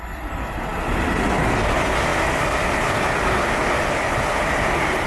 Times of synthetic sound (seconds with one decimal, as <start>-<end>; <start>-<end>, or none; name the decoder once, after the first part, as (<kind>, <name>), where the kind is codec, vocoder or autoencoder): none